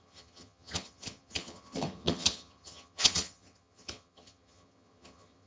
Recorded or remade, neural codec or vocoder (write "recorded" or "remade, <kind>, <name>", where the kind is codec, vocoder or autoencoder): remade, vocoder, HiFi-GAN